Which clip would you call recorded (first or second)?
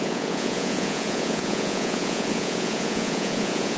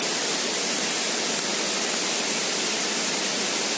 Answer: second